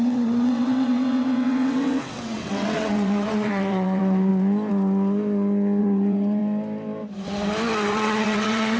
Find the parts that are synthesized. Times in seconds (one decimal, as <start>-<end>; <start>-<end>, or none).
0.0-4.3; 5.8-6.4; 7.9-8.8